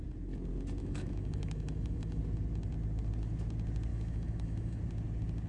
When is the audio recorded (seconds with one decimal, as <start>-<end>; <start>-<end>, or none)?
0.0-0.8; 2.2-3.9; 4.8-5.5